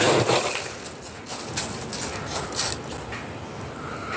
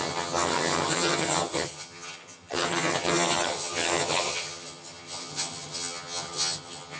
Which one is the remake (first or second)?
second